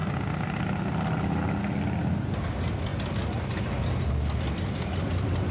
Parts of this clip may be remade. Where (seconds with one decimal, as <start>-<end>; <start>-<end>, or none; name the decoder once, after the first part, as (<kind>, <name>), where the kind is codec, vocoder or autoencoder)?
none

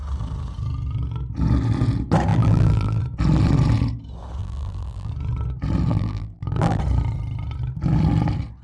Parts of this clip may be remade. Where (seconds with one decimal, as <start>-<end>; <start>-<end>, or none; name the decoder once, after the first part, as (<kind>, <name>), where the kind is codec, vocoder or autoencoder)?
2.3-3.0 (vocoder, BigVGAN v2); 4.4-5.1; 5.9-6.8